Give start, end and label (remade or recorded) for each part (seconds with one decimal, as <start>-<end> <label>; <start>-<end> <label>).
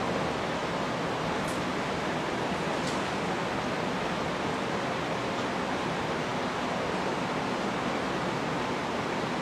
0.0-9.4 recorded